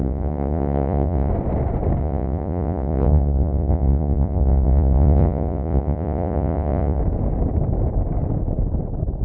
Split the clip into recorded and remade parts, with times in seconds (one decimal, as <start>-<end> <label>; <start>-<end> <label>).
0.0-1.3 remade; 1.3-2.0 recorded; 2.0-7.0 remade; 7.0-9.2 recorded